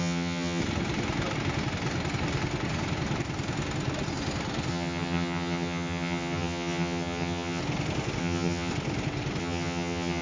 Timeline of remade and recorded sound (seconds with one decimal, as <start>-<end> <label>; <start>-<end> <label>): 0.0-0.6 remade; 0.6-4.7 recorded; 4.7-7.6 remade; 7.6-8.2 recorded; 8.2-8.7 remade; 8.7-9.4 recorded; 9.4-10.2 remade